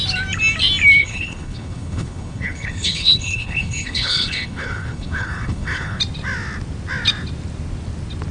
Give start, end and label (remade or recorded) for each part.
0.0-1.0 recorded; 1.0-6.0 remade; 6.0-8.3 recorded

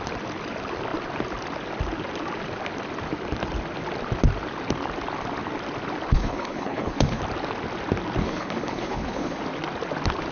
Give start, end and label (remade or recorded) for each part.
0.0-6.1 recorded; 6.1-7.2 remade; 7.2-8.2 recorded; 8.2-9.4 remade; 9.4-10.3 recorded

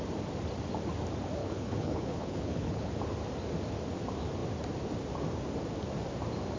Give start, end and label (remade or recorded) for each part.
0.0-1.4 recorded; 1.4-2.9 remade; 2.9-6.6 recorded